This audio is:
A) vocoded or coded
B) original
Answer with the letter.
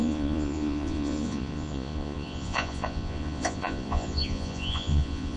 A